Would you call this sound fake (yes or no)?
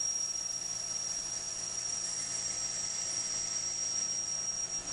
no